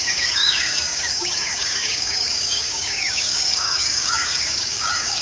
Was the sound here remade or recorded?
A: remade